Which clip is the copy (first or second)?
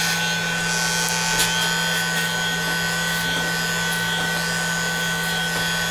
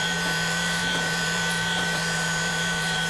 second